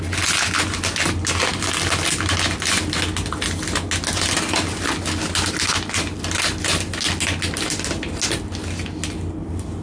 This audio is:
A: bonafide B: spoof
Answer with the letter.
A